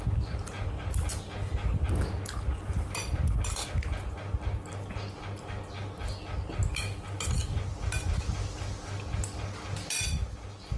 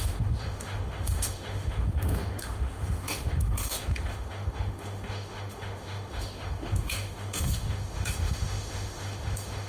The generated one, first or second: second